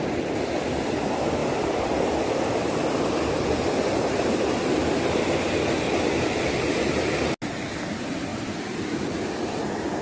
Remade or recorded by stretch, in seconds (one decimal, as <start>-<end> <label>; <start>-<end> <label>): 0.0-1.4 recorded; 1.4-4.7 remade; 4.7-8.3 recorded; 8.3-9.6 remade; 9.6-10.0 recorded